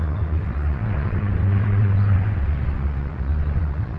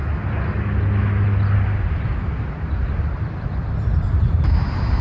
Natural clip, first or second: second